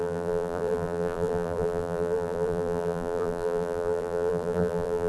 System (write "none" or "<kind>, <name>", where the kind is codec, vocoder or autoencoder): vocoder, BigVGAN v2